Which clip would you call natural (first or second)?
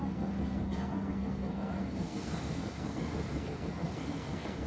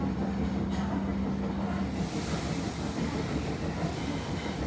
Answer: second